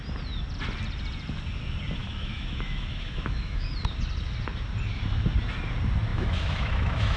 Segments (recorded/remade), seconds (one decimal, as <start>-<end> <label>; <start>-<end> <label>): 0.0-2.0 recorded; 2.0-3.7 remade; 3.7-6.1 recorded; 6.1-7.2 remade